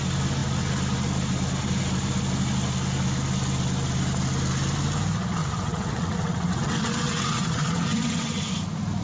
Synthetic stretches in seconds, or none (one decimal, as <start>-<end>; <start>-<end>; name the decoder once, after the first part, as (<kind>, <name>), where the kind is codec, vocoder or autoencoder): 5.4-8.4 (vocoder, WaveNeXt)